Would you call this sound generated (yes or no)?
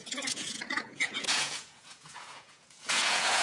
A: yes